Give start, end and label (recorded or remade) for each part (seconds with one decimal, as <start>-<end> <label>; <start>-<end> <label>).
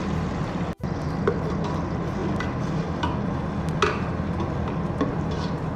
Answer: 0.0-5.8 recorded